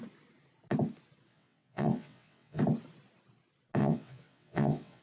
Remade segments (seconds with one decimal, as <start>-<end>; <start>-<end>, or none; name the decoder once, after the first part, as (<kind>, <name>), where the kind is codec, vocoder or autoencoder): 1.3-2.6 (vocoder, WaveNeXt); 3.8-5.0

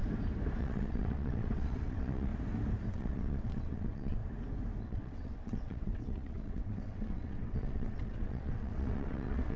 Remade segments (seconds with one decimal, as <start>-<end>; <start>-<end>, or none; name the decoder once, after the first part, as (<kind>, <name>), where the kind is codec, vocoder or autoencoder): 0.6-2.3 (vocoder, WaveNeXt); 2.9-4.2; 4.8-9.6

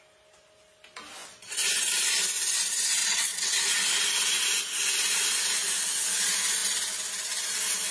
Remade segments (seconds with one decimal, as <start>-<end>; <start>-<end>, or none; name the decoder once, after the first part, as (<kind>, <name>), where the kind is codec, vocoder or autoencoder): 3.0-3.6 (vocoder, WaveNeXt)

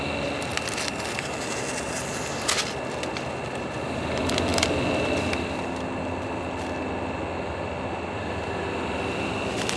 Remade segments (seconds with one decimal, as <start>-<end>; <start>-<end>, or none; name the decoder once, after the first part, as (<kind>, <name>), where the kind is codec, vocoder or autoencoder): none

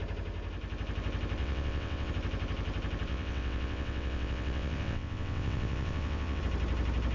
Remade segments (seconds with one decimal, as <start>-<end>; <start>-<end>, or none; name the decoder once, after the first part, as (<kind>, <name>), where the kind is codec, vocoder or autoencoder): 1.4-2.1 (vocoder, WaveNeXt); 3.1-6.4